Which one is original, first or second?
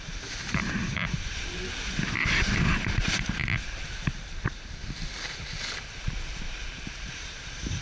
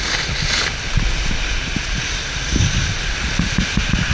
second